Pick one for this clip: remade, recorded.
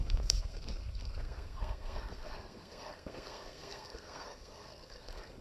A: remade